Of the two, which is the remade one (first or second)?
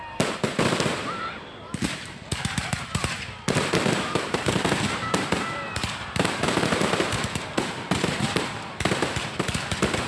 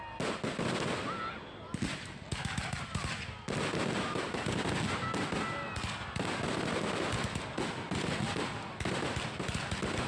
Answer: first